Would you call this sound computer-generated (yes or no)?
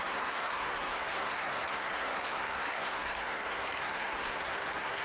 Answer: yes